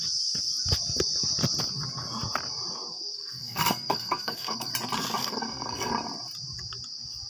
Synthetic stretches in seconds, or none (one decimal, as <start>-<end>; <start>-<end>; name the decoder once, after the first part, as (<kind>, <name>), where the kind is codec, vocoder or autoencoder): 2.9-4.7 (codec, SNAC); 5.2-5.9